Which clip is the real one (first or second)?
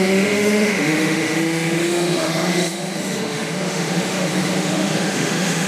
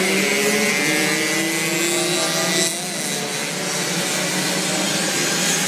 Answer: second